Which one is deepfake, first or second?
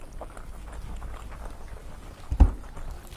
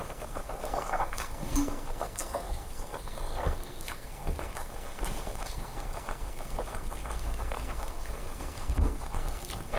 second